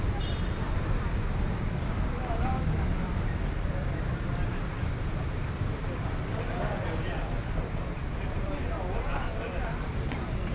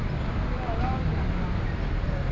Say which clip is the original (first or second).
second